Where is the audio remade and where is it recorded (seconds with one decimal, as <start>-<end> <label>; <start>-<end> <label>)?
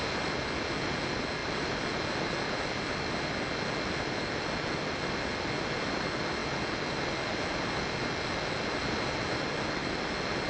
0.0-10.5 recorded